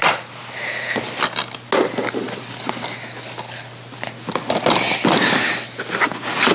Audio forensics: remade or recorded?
recorded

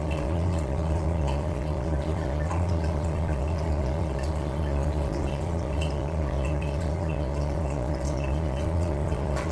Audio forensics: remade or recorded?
remade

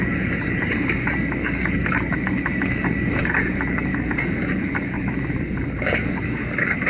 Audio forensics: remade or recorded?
remade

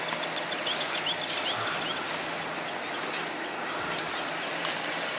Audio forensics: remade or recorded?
recorded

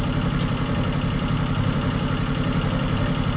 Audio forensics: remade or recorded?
recorded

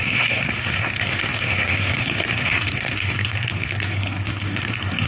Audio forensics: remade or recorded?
remade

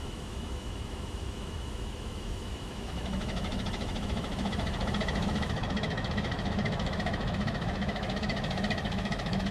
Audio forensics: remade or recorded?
remade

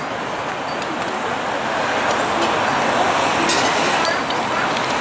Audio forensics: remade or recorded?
recorded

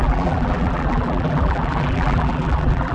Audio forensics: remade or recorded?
remade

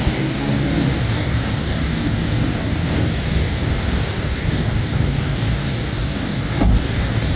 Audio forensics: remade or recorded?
remade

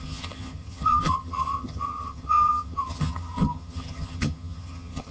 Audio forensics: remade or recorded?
remade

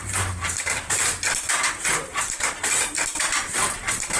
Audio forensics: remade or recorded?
recorded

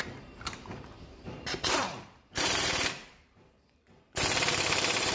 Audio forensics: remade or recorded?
remade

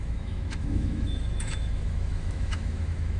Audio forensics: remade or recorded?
remade